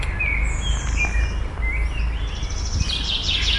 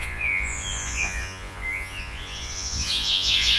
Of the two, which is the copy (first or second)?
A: second